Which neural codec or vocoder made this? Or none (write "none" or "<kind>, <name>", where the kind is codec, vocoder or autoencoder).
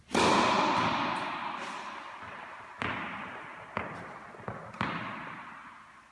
none